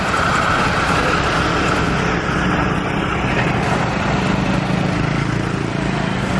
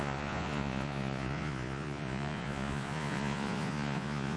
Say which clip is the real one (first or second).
first